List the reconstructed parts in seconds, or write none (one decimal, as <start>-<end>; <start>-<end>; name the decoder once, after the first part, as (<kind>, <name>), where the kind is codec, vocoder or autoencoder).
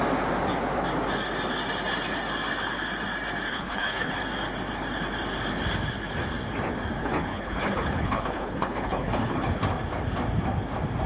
3.5-4.1 (codec, HILCodec); 7.0-9.6